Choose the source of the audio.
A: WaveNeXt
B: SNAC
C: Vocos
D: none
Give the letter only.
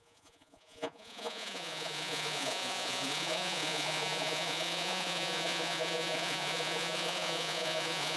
C